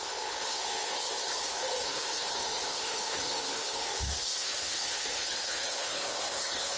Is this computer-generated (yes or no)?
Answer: yes